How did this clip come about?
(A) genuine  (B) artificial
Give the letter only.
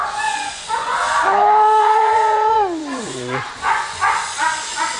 B